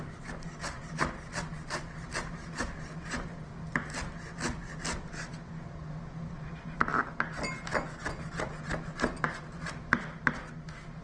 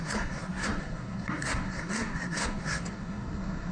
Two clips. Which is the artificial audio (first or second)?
second